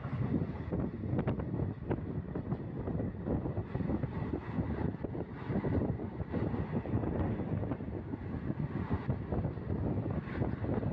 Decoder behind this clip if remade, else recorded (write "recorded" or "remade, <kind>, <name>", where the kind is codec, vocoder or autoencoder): recorded